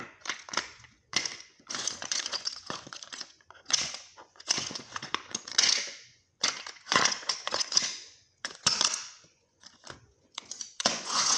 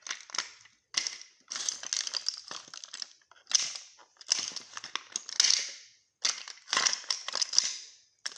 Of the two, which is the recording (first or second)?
second